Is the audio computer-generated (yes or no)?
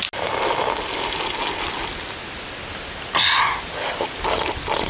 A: no